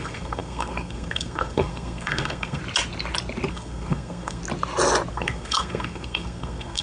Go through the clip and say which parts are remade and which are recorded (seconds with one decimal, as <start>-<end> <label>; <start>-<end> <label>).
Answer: 0.0-2.6 remade; 2.6-3.5 recorded; 3.5-4.4 remade; 4.4-5.1 recorded; 5.1-6.8 remade